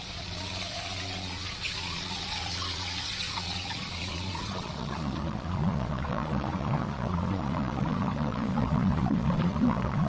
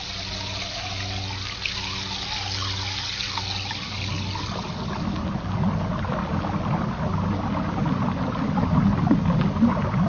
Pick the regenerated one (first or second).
first